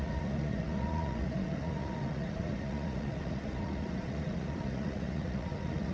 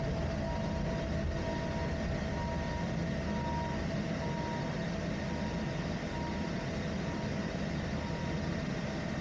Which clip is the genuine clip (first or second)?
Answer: second